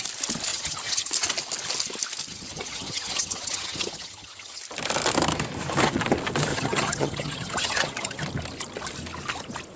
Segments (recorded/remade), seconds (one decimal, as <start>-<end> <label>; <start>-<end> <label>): 0.0-0.5 recorded; 0.5-1.1 remade; 1.1-2.3 recorded; 2.3-4.6 remade; 4.6-6.5 recorded; 6.5-8.2 remade; 8.2-9.8 recorded